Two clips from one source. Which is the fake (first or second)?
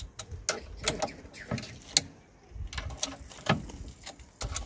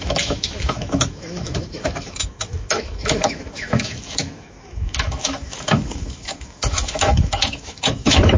second